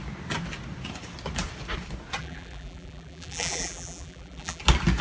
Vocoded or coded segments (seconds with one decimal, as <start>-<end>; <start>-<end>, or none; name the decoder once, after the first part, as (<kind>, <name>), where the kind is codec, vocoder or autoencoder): 2.2-4.6 (vocoder, BigVGAN v2)

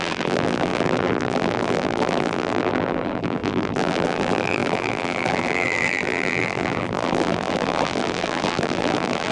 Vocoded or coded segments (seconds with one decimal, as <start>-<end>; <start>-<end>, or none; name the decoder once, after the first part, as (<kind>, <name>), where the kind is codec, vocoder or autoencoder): 0.0-9.3 (vocoder, BigVGAN v2)